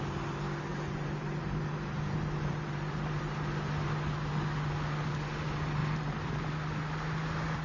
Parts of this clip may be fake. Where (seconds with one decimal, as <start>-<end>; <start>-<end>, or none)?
0.7-3.3; 5.8-6.5